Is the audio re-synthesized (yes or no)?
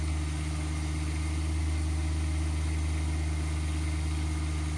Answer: no